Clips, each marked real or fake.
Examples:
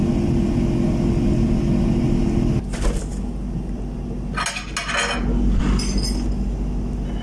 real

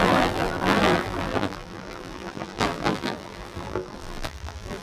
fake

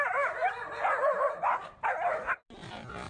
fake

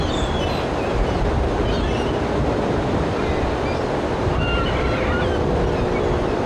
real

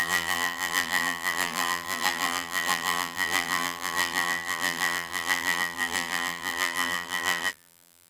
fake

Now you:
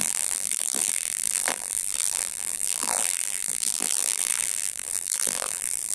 fake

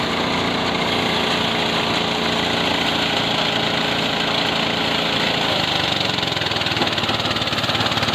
real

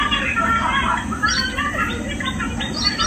real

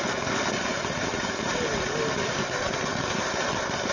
real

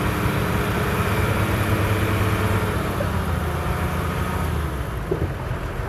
real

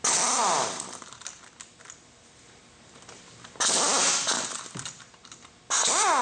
real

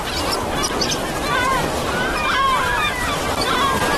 real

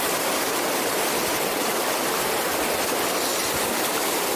real